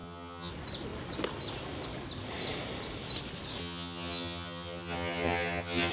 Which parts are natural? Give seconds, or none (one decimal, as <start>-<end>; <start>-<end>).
0.5-3.6